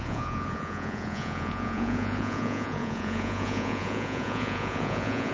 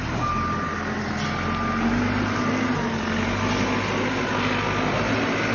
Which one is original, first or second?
second